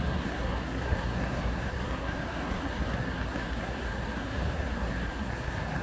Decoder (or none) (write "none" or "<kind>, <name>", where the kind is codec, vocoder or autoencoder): codec, SNAC